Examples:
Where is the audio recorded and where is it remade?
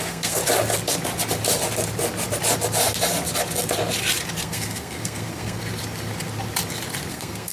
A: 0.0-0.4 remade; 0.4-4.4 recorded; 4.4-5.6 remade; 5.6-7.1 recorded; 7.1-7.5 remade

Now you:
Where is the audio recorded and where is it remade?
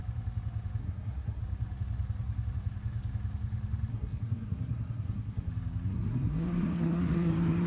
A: 0.0-0.8 recorded; 0.8-1.4 remade; 1.4-3.9 recorded; 3.9-5.5 remade; 5.5-5.9 recorded; 5.9-7.3 remade; 7.3-7.7 recorded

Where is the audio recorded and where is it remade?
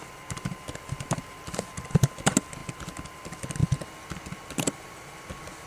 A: 0.0-5.7 recorded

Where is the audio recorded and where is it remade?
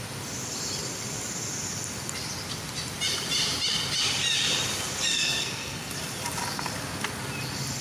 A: 0.0-5.1 recorded; 5.1-5.9 remade; 5.9-7.8 recorded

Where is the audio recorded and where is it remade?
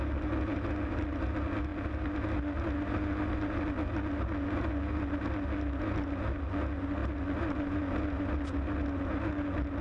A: 0.0-9.8 recorded